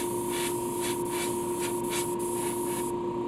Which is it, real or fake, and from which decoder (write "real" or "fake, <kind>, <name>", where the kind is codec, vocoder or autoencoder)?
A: real